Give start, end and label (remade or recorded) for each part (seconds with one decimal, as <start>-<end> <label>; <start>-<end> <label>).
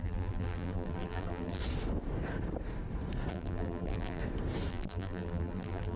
0.0-1.6 remade; 1.6-3.3 recorded; 3.3-4.2 remade; 4.2-4.7 recorded; 4.7-6.0 remade